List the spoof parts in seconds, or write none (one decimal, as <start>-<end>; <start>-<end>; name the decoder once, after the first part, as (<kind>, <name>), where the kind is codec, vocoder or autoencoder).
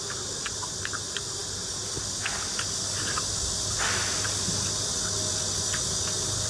none